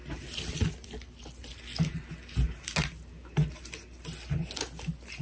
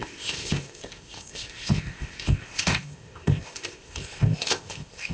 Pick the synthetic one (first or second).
second